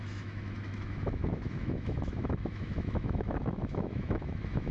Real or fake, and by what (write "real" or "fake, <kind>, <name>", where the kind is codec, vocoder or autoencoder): fake, autoencoder, DAC-VAE